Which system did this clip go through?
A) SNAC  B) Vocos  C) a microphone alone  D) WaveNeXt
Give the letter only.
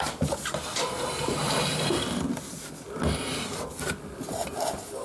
C